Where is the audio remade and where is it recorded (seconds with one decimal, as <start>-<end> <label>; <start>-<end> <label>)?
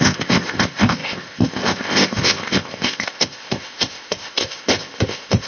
0.0-5.5 remade